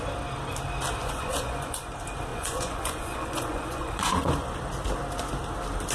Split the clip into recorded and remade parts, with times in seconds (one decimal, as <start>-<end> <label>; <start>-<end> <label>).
0.0-1.0 recorded; 1.0-1.8 remade; 1.8-2.3 recorded; 2.3-4.6 remade; 4.6-5.9 recorded